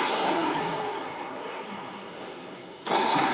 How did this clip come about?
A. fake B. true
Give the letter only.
A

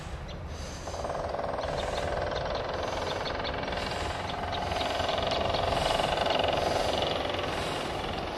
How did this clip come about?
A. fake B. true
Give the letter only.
B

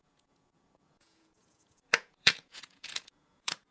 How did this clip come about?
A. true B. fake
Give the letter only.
B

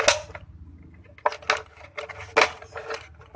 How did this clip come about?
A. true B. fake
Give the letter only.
A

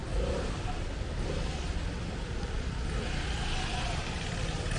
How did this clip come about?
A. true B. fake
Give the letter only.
B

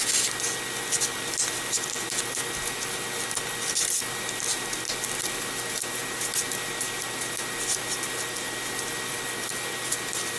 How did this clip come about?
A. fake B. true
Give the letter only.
B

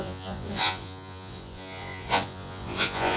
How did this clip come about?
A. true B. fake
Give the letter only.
B